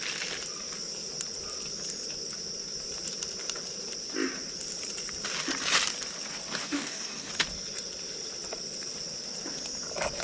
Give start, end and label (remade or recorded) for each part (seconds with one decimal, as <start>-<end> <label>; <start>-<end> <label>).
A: 0.0-6.6 recorded; 6.6-7.3 remade; 7.3-10.2 recorded